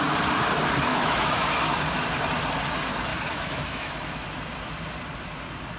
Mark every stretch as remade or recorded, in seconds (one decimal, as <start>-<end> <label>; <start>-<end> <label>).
0.0-0.9 recorded; 0.9-1.5 remade; 1.5-3.1 recorded; 3.1-3.9 remade; 3.9-5.8 recorded